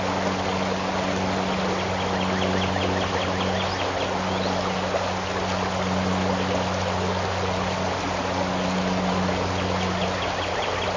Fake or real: real